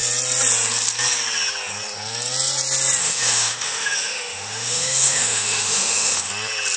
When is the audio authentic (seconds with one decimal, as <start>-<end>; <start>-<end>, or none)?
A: 0.0-3.0; 6.3-6.8